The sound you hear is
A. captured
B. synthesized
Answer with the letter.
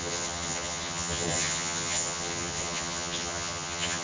B